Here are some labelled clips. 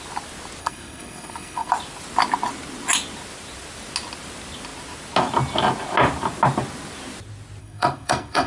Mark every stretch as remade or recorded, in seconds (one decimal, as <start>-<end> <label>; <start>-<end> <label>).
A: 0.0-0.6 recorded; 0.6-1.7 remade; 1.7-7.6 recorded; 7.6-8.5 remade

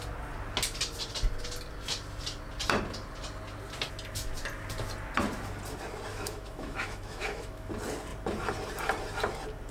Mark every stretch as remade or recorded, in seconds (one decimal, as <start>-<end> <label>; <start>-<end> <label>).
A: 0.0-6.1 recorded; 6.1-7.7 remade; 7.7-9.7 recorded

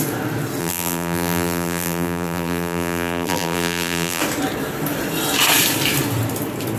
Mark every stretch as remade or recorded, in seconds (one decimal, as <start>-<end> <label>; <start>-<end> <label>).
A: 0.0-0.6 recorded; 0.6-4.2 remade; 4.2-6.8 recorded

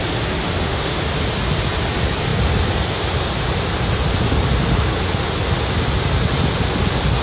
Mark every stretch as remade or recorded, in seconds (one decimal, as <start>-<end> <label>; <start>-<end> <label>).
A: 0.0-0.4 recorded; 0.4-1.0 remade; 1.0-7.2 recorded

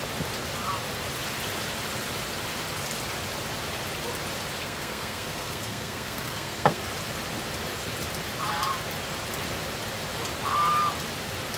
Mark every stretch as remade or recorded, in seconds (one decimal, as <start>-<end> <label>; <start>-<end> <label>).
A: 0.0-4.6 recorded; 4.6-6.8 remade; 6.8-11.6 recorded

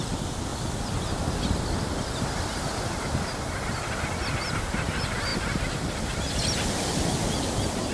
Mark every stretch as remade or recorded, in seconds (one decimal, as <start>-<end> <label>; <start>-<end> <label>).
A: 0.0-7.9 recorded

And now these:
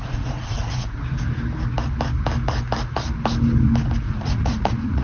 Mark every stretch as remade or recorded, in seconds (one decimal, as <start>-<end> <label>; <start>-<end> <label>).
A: 0.0-1.0 remade; 1.0-4.0 recorded; 4.0-5.0 remade